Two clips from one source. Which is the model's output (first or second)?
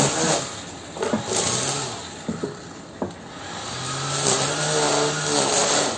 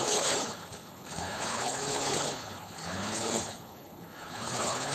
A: second